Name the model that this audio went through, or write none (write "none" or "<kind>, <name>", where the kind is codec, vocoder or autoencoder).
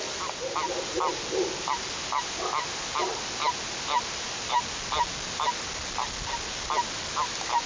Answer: none